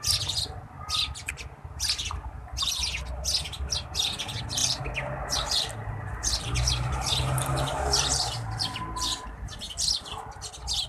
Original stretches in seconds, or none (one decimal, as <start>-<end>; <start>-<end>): 0.0-4.6; 9.9-10.9